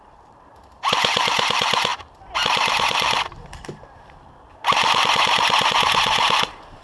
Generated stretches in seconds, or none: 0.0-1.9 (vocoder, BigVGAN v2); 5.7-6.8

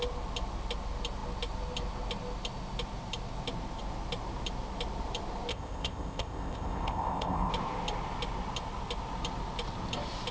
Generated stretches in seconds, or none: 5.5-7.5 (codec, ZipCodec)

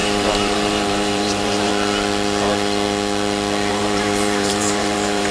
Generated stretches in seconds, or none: 0.0-1.7 (vocoder, BigVGAN v2); 3.7-5.3